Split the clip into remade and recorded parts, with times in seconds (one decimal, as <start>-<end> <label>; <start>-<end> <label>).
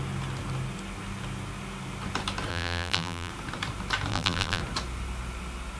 0.0-2.5 recorded; 2.5-3.3 remade; 3.3-4.1 recorded; 4.1-4.6 remade; 4.6-5.8 recorded